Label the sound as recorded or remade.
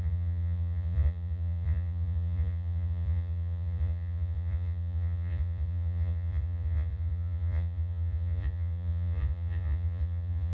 remade